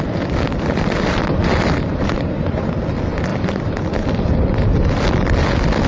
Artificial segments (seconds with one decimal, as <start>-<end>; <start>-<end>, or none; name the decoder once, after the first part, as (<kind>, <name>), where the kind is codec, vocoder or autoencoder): 1.9-2.7 (vocoder, BigVGAN v2); 3.3-3.8